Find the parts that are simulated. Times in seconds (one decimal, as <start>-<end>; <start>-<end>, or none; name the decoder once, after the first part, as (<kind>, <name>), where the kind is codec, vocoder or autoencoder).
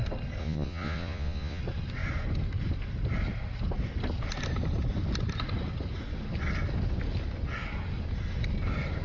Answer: 0.4-1.6 (vocoder, Vocos)